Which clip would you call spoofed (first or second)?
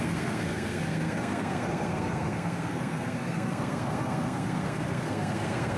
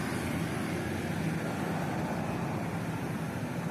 first